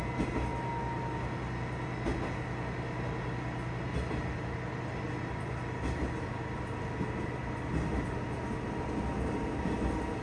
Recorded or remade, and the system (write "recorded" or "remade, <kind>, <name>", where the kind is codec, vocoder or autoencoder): recorded